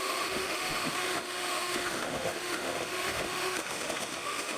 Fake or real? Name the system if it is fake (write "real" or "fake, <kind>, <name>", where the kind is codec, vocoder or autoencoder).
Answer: fake, autoencoder, DAC-VAE